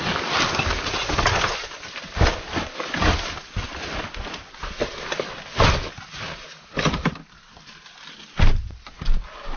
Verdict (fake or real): real